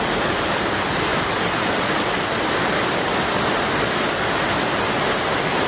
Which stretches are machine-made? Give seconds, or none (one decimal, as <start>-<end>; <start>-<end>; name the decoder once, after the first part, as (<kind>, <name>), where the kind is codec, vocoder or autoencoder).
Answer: none